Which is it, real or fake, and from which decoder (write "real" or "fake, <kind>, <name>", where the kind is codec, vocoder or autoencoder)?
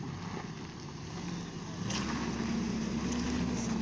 real